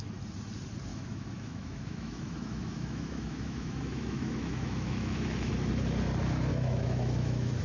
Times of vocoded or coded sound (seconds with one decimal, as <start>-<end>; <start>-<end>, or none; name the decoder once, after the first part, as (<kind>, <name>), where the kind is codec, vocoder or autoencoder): 0.9-5.5 (autoencoder, DAC-VAE); 6.5-7.6